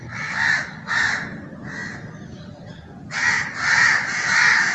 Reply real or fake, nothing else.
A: real